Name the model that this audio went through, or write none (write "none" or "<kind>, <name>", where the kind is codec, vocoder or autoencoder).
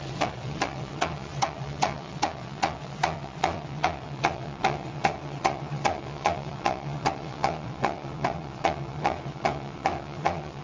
vocoder, WaveNeXt